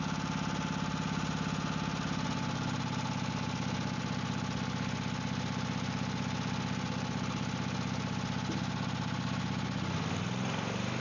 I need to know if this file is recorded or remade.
recorded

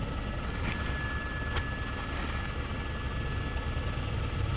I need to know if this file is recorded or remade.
recorded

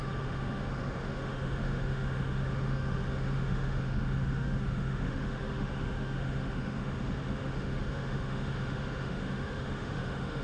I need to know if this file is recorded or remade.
remade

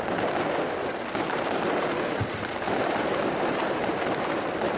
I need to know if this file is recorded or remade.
recorded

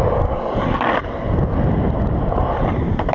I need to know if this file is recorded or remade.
recorded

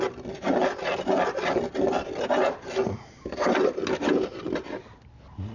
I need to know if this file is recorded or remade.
recorded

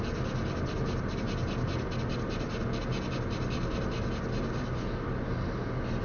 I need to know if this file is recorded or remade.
recorded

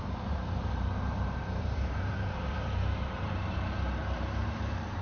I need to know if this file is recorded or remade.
remade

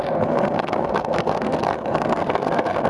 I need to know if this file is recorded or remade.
remade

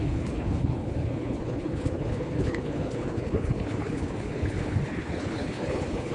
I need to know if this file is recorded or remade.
remade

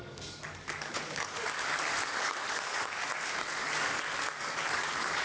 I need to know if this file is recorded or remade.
remade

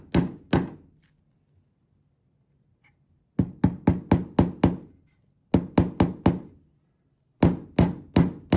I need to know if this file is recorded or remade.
recorded